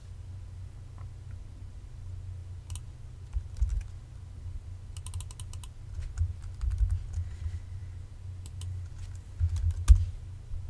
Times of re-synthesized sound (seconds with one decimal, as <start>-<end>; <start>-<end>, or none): none